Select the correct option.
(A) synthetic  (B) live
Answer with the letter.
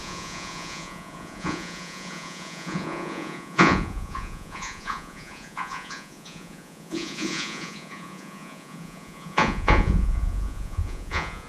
A